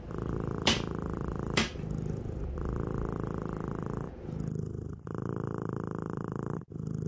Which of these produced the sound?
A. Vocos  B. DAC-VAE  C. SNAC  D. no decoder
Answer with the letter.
D